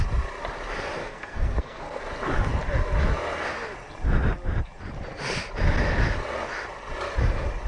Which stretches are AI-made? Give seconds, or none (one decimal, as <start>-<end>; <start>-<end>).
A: 1.0-2.0